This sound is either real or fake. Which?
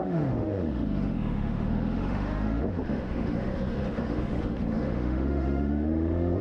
fake